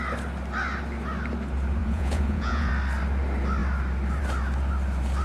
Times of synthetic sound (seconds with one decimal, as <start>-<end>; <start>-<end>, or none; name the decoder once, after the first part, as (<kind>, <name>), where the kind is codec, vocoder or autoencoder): 1.8-2.7 (vocoder, Vocos)